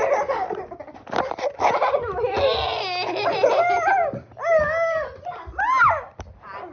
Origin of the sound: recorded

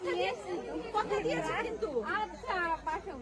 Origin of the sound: recorded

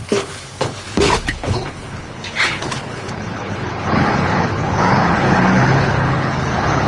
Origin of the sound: remade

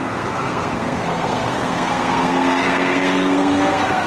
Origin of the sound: remade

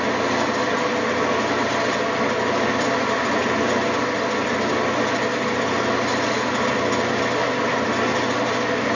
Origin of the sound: recorded